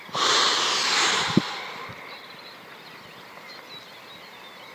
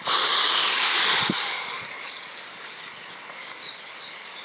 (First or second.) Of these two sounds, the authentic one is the first